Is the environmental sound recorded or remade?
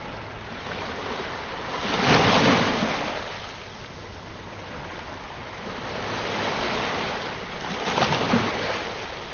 recorded